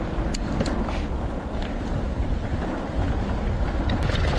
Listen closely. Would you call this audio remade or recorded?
recorded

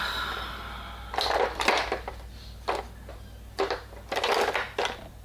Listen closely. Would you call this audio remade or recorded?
recorded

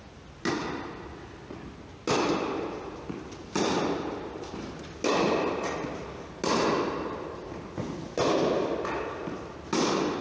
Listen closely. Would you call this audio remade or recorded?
recorded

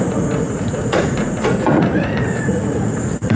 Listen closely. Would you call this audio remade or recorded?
remade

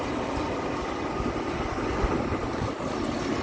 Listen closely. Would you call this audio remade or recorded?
recorded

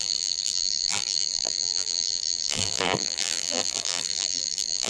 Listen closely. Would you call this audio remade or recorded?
remade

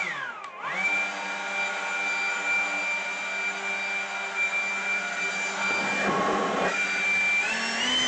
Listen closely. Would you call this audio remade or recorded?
recorded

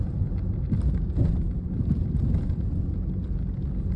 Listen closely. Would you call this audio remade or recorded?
recorded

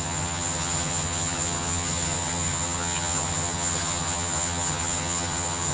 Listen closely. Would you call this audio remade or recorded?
remade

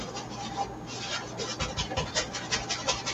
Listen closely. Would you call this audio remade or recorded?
recorded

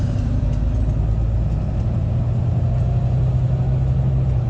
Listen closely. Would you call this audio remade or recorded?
recorded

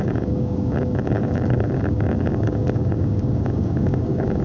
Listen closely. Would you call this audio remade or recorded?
remade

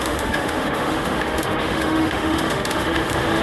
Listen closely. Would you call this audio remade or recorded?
remade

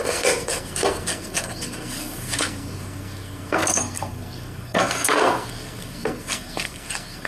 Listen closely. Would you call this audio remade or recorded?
remade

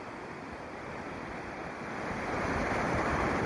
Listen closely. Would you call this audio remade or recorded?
recorded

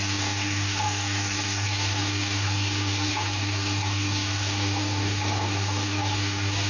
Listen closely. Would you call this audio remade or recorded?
remade